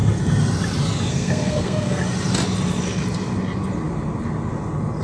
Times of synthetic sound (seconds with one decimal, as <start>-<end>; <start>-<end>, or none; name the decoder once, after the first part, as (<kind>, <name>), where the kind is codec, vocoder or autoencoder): 1.1-2.0 (codec, SNAC)